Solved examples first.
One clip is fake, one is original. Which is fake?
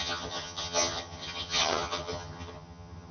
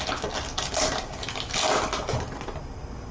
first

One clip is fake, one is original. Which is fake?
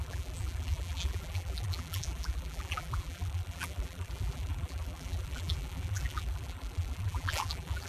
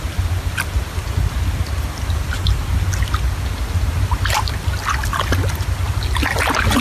first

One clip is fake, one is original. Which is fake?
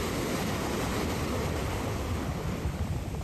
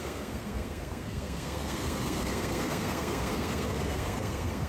second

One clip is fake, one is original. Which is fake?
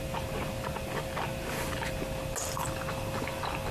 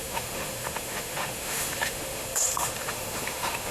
second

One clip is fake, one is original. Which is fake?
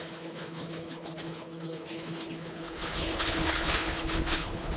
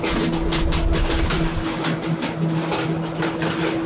first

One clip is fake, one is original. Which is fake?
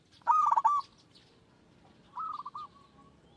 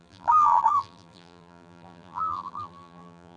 second